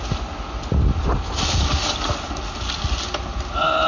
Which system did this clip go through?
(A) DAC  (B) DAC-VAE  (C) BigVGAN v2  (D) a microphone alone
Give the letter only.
D